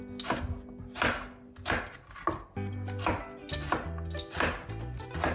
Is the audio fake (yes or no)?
no